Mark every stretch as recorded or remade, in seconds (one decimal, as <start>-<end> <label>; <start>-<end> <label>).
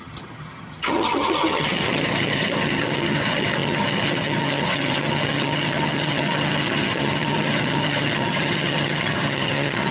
0.0-9.9 remade